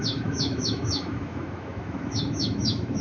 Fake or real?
fake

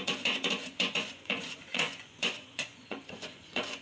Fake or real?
fake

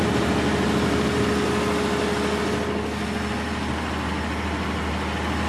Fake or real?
real